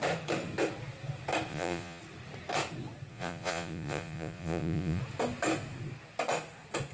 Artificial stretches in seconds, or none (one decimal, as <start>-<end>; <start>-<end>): 1.5-2.0; 3.1-5.0

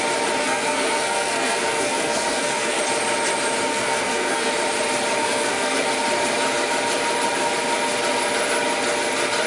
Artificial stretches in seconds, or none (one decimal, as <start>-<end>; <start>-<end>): 0.4-2.8; 3.7-4.5; 5.2-5.8

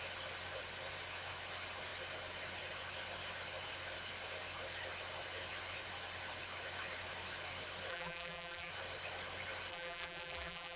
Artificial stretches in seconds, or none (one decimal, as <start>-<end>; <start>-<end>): 7.9-8.7; 9.7-10.8